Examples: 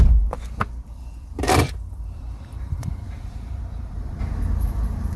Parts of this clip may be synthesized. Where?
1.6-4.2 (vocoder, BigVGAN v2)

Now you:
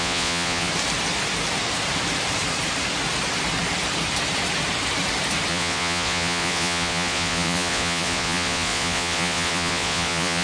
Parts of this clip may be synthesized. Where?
0.0-0.7 (vocoder, Vocos); 5.5-10.4

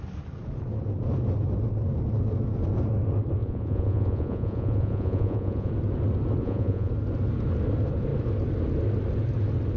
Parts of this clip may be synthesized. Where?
3.4-5.7 (vocoder, Vocos); 6.4-6.9

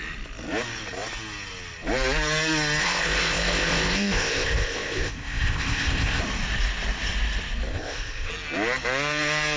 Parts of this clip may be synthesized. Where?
2.8-6.2 (codec, ZipCodec); 7.7-8.3

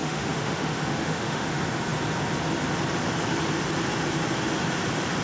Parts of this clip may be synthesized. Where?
0.0-1.5 (autoencoder, DAC-VAE)

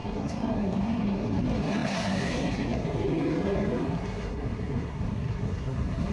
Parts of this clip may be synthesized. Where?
0.0-6.1 (codec, SNAC)

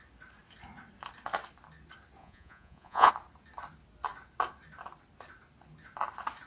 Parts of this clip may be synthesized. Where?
2.2-3.1 (vocoder, Vocos)

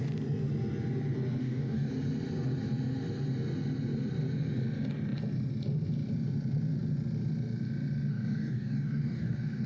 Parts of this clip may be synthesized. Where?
1.4-1.9 (codec, DAC); 8.1-9.7